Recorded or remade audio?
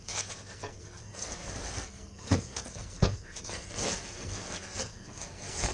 remade